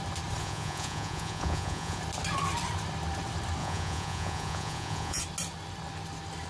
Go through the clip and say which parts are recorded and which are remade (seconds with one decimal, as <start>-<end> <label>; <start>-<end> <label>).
0.0-0.4 recorded; 0.4-2.0 remade; 2.0-3.6 recorded; 3.6-5.2 remade; 5.2-6.5 recorded